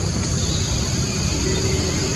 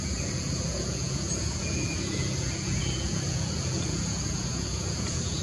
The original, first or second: first